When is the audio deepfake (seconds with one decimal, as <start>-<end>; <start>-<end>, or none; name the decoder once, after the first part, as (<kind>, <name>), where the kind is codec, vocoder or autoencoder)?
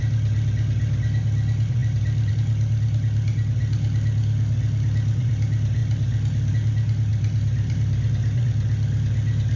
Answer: 7.1-8.1 (vocoder, BigVGAN v2)